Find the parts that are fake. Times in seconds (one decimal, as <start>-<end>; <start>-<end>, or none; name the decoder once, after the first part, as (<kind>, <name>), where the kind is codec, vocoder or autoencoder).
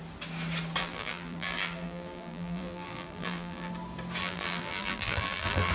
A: 0.8-3.7 (vocoder, BigVGAN v2); 4.2-5.7